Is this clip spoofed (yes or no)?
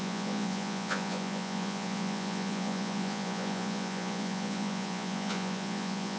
yes